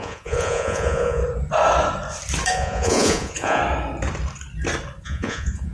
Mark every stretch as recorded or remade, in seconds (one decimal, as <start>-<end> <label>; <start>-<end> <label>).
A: 0.0-1.2 remade; 1.2-2.5 recorded; 2.5-3.6 remade; 3.6-5.0 recorded; 5.0-5.7 remade